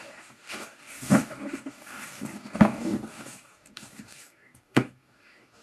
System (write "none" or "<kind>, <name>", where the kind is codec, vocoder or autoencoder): codec, DAC